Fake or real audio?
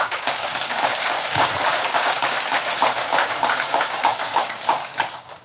fake